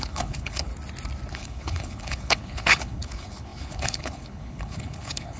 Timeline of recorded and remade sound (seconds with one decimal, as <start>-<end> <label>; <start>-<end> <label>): 0.0-0.7 remade; 0.7-1.3 recorded; 1.3-5.4 remade